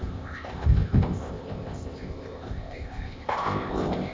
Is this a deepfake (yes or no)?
yes